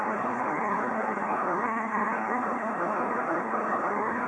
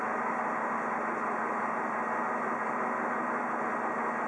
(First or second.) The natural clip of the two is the second